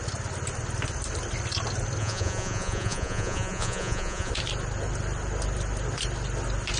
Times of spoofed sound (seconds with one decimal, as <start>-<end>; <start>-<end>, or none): 2.0-4.3